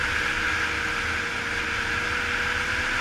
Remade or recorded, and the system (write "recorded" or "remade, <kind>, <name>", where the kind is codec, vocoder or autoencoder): recorded